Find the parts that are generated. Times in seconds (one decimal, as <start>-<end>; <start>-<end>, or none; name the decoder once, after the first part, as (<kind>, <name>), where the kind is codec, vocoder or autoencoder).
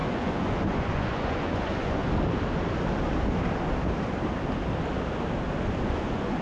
0.0-2.0 (vocoder, Vocos); 5.8-6.4